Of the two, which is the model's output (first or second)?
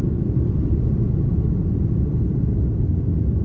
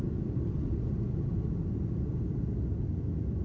first